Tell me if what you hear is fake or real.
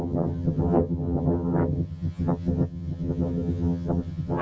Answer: fake